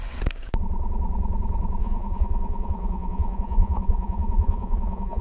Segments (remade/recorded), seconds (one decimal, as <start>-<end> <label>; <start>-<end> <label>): 0.0-1.8 recorded; 1.8-5.2 remade